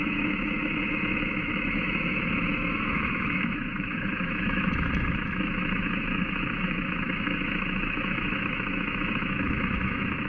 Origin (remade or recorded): remade